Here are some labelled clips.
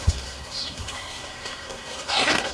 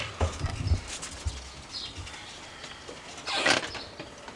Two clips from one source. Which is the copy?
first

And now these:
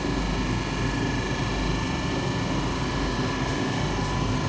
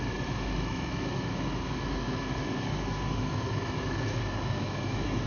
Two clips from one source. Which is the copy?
second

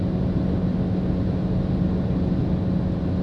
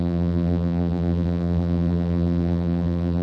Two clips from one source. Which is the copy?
second